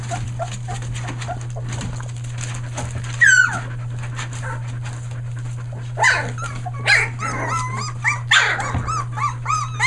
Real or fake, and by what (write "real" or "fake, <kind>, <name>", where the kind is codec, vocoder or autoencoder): real